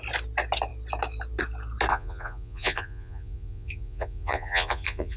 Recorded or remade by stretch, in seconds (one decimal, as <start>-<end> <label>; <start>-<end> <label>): 0.0-1.9 recorded; 1.9-5.2 remade

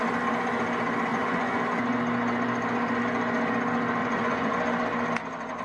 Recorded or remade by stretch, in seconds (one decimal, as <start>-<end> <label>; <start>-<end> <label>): 0.0-1.1 recorded; 1.1-1.6 remade; 1.6-4.0 recorded; 4.0-4.5 remade; 4.5-5.6 recorded

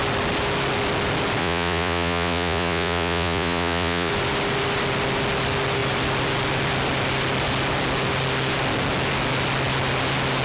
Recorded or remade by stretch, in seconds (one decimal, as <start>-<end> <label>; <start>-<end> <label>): 0.0-1.4 recorded; 1.4-4.1 remade; 4.1-10.4 recorded

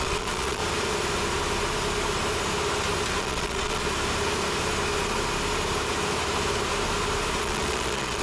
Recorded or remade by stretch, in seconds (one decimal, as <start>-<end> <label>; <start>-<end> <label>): 0.0-0.6 remade; 0.6-3.2 recorded; 3.2-3.8 remade; 3.8-7.4 recorded; 7.4-8.2 remade

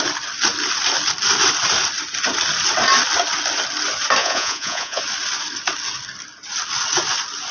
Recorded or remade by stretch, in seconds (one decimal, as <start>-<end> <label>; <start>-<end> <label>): 0.0-4.2 recorded; 4.2-5.0 remade; 5.0-7.5 recorded

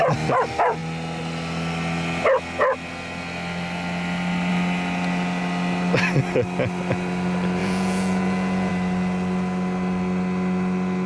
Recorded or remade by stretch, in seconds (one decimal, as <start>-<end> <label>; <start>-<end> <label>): 0.0-7.6 recorded; 7.6-8.7 remade; 8.7-11.1 recorded